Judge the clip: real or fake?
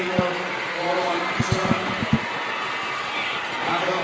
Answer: real